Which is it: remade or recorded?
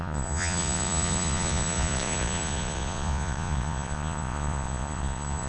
remade